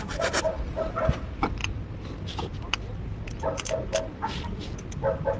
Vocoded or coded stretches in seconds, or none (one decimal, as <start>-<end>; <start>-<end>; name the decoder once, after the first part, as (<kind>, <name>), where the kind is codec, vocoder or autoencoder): none